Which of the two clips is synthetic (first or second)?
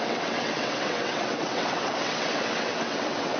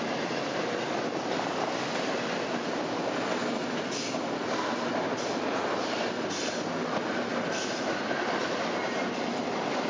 first